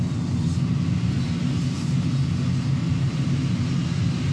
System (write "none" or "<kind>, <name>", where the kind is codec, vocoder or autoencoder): none